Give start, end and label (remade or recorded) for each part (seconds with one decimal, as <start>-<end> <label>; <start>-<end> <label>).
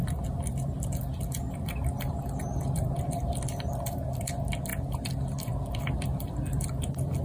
0.0-4.3 remade; 4.3-4.7 recorded; 4.7-7.2 remade